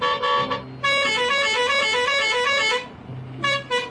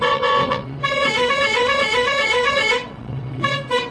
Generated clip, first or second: second